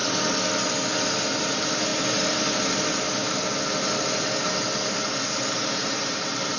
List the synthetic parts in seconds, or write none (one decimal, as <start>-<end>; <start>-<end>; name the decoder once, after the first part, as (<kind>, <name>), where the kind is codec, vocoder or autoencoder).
1.4-1.9 (vocoder, BigVGAN v2); 5.8-6.6

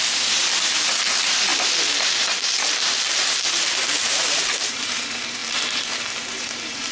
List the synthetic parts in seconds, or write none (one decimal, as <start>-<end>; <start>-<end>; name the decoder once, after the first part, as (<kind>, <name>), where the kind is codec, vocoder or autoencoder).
0.0-6.9 (vocoder, BigVGAN v2)

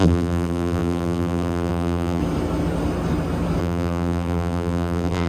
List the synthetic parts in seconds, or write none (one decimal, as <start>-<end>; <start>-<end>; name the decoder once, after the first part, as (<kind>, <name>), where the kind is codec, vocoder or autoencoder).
0.0-2.2 (vocoder, BigVGAN v2); 3.6-5.3

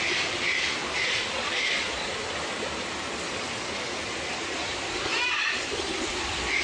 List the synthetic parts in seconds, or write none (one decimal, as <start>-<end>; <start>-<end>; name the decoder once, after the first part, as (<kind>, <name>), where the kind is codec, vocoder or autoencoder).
0.0-0.8 (vocoder, BigVGAN v2); 4.0-6.6

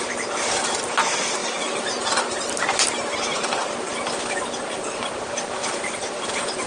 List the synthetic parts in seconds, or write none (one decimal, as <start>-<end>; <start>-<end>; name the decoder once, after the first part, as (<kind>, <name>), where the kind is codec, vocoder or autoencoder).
1.4-2.2 (vocoder, BigVGAN v2)

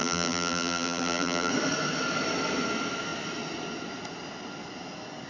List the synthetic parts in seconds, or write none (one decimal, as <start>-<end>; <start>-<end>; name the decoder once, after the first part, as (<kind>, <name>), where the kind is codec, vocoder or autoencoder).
0.0-1.5 (vocoder, BigVGAN v2)

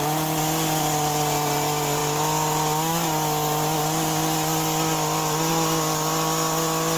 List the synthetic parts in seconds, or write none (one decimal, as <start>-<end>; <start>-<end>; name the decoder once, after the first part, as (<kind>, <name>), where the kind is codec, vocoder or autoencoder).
none